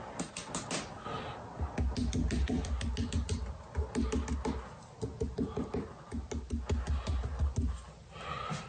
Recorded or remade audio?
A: recorded